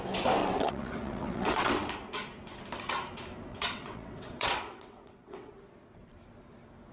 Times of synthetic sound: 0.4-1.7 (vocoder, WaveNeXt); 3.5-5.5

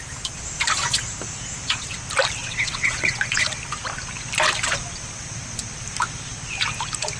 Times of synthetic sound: 2.4-3.4 (vocoder, WaveNeXt)